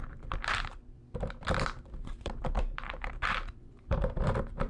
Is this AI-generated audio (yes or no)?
yes